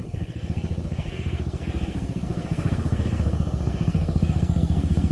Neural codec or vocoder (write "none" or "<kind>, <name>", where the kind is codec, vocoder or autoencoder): codec, SNAC